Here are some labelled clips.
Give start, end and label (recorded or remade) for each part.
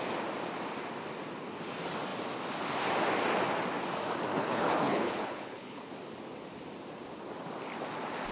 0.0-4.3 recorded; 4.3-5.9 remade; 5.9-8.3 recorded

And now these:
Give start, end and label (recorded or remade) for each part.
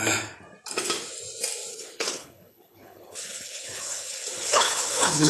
0.0-1.7 recorded; 1.7-5.3 remade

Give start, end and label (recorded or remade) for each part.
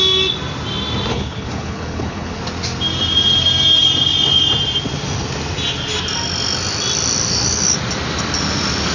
0.0-1.1 recorded; 1.1-2.4 remade; 2.4-8.9 recorded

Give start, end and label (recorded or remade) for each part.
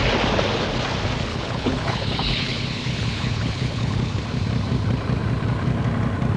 0.0-1.3 recorded; 1.3-4.2 remade; 4.2-6.4 recorded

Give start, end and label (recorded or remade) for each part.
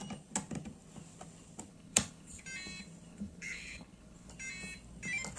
0.0-1.7 recorded; 1.7-2.4 remade; 2.4-3.1 recorded; 3.1-4.3 remade; 4.3-5.4 recorded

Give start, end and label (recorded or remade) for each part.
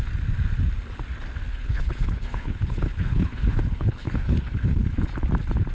0.0-1.5 recorded; 1.5-4.9 remade; 4.9-5.7 recorded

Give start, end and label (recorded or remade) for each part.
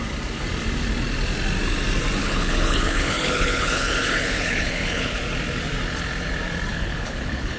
0.0-2.2 recorded; 2.2-5.2 remade; 5.2-6.7 recorded; 6.7-7.6 remade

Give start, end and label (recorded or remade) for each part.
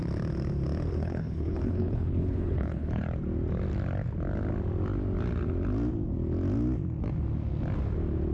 0.0-0.9 recorded; 0.9-3.0 remade; 3.0-8.3 recorded